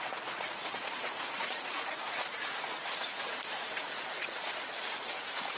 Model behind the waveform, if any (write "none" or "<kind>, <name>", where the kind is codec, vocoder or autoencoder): vocoder, Vocos